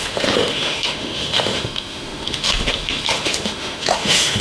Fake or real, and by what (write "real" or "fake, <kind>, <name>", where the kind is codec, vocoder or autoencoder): fake, autoencoder, DAC-VAE